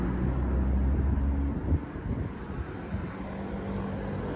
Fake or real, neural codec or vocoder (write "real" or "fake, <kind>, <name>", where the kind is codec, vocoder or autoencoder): real